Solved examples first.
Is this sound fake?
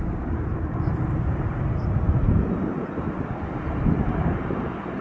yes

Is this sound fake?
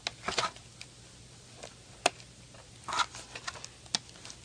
no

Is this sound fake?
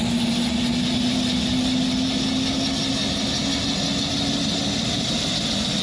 no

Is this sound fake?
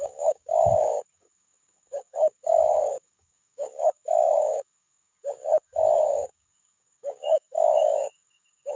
yes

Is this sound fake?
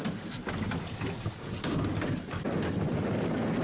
no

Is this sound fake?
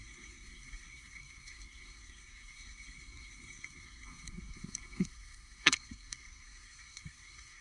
yes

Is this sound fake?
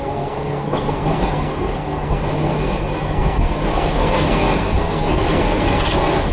yes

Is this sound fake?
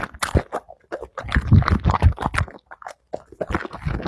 no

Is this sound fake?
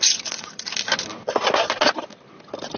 no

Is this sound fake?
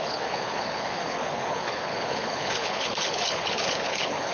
yes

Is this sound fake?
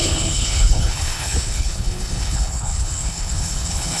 yes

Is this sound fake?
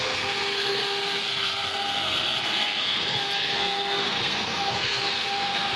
yes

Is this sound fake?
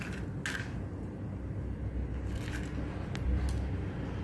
no